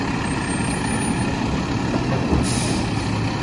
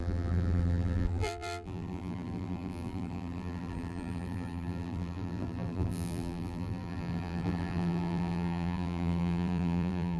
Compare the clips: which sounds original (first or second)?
first